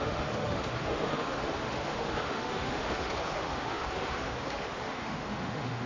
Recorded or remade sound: remade